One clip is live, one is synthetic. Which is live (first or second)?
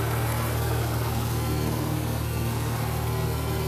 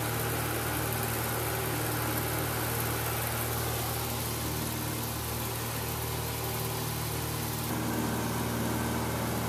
second